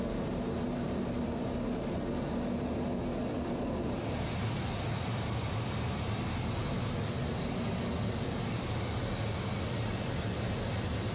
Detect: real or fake real